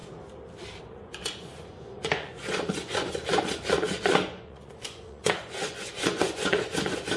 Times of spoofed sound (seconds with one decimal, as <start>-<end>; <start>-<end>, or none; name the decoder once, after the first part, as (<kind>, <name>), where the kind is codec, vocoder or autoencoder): 0.8-7.2 (vocoder, Vocos)